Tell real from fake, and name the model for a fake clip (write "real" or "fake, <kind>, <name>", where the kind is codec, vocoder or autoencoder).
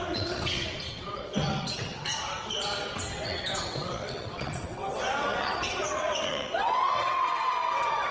fake, vocoder, WaveNeXt